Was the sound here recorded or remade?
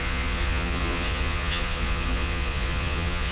remade